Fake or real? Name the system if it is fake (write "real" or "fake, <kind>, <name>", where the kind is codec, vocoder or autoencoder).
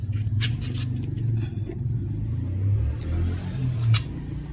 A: real